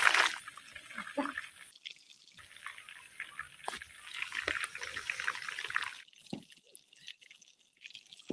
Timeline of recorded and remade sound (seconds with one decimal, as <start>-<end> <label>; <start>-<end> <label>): 0.0-8.3 recorded

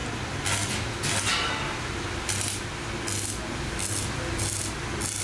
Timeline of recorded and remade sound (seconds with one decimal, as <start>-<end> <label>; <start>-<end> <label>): 0.0-5.2 recorded

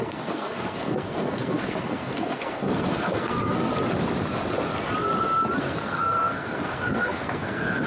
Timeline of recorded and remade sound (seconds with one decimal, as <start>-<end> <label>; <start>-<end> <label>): 0.0-3.7 remade; 3.7-5.6 recorded; 5.6-7.9 remade

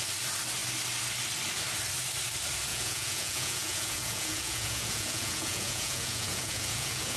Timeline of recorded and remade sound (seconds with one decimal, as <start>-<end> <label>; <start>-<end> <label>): 0.0-2.7 recorded; 2.7-7.2 remade

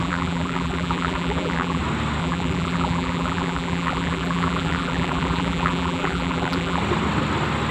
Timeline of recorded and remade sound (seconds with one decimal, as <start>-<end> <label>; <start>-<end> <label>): 0.0-1.8 remade; 1.8-2.2 recorded; 2.2-6.8 remade; 6.8-7.7 recorded

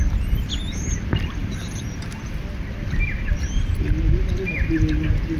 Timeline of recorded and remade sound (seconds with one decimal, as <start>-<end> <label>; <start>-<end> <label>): 0.0-1.4 recorded; 1.4-2.0 remade; 2.0-5.4 recorded

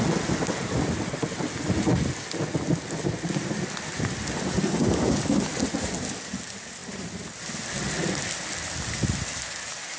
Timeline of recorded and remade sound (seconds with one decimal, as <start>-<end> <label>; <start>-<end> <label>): 0.0-10.0 recorded